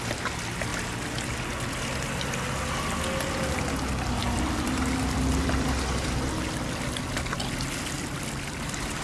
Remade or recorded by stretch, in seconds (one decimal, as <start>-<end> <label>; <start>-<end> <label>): 0.0-4.2 recorded; 4.2-5.7 remade; 5.7-9.0 recorded